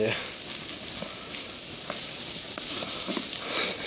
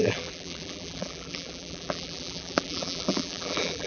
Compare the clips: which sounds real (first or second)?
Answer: first